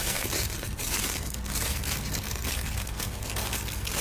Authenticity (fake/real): fake